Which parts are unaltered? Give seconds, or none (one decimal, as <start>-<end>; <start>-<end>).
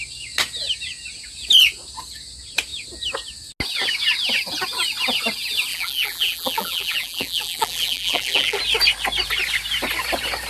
0.0-5.7; 8.6-10.5